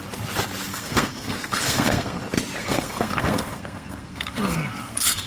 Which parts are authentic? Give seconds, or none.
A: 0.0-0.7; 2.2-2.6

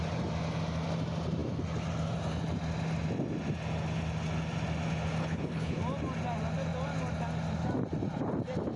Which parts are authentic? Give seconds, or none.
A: 0.0-5.2; 5.8-8.8

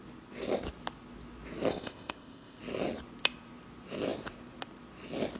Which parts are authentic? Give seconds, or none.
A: 0.0-1.7; 2.6-5.4

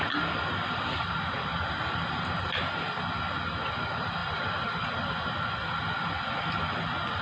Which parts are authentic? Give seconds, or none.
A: 0.0-0.6; 2.7-4.2; 5.1-7.2

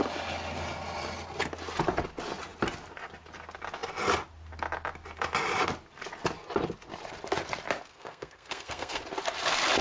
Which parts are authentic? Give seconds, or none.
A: 0.0-7.9; 9.0-9.8